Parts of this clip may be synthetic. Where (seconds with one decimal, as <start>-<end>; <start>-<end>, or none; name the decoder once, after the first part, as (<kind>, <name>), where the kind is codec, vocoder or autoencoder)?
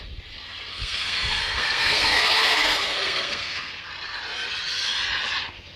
0.7-3.9 (codec, SNAC)